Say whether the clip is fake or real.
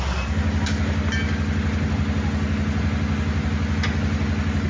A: real